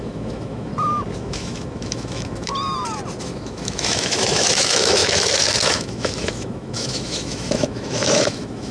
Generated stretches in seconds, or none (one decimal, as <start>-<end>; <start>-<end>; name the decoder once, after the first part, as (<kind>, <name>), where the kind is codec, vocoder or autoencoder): 0.0-0.7 (autoencoder, DAC-VAE); 1.2-2.5; 3.2-8.7